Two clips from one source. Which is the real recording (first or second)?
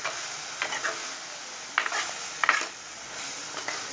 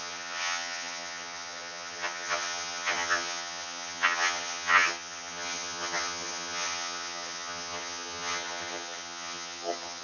first